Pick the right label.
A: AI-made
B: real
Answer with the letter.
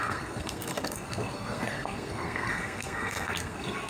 A